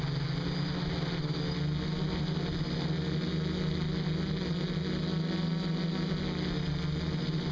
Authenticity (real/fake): real